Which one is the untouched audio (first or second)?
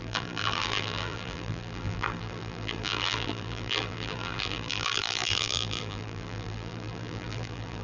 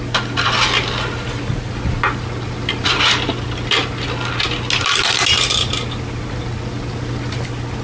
second